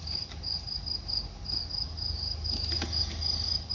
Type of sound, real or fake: real